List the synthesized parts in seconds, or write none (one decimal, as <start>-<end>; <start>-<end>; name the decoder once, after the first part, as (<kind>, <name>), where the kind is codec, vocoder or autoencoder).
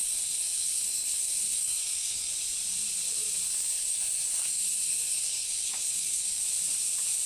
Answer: 0.0-2.3 (codec, SNAC); 3.5-6.4